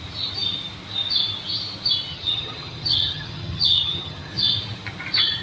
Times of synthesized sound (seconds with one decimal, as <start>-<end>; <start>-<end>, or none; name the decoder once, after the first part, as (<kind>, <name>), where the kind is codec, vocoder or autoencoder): 2.1-4.3 (vocoder, HiFi-GAN)